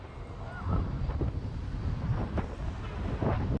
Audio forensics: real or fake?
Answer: real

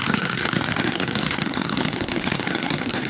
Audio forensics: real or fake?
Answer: fake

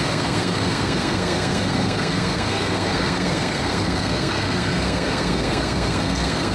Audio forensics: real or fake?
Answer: fake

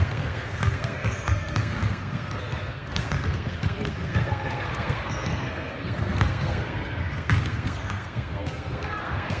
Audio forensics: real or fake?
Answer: fake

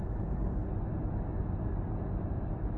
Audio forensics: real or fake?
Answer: real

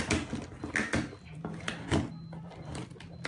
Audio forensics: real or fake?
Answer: real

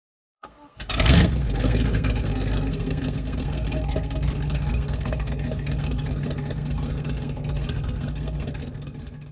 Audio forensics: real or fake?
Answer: fake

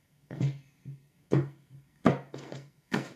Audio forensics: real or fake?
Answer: fake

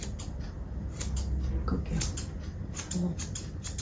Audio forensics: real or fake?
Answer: real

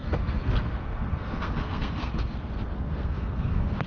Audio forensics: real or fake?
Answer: fake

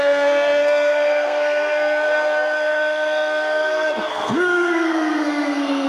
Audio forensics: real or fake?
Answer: fake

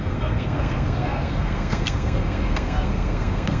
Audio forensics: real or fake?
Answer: fake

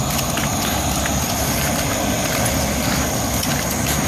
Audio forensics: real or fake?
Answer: real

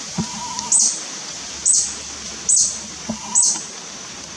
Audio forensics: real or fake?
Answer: real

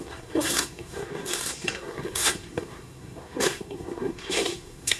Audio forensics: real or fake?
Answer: fake